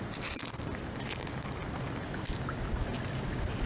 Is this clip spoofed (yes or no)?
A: no